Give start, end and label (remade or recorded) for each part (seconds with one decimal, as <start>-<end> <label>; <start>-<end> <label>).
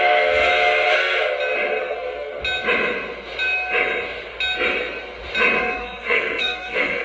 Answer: 0.0-0.5 remade; 0.5-1.8 recorded; 1.8-2.4 remade; 2.4-5.6 recorded; 5.6-7.0 remade